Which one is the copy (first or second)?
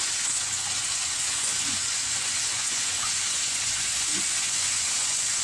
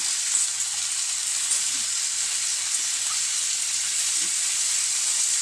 first